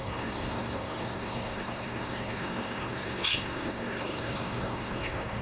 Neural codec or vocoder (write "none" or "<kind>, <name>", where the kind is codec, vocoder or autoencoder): codec, SNAC